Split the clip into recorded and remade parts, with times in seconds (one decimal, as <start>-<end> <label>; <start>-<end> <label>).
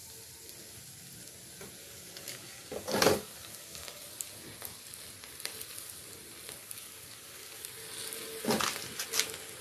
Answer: 0.0-1.8 recorded; 1.8-4.0 remade; 4.0-6.6 recorded; 6.6-7.6 remade; 7.6-9.6 recorded